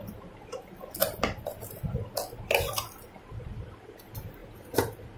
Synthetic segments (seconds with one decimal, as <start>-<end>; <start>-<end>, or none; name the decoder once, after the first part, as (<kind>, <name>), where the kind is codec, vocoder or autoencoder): none